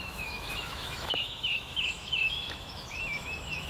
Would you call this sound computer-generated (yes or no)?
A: yes